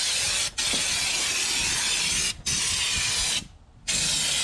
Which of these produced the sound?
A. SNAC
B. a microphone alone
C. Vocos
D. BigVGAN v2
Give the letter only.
B